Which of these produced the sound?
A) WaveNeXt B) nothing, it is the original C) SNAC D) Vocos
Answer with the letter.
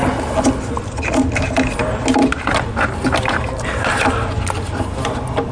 B